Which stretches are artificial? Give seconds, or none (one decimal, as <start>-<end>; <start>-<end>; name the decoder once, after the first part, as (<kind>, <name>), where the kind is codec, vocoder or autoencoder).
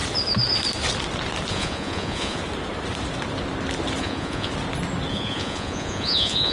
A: 1.5-2.4 (vocoder, Vocos); 4.0-4.5; 5.1-6.5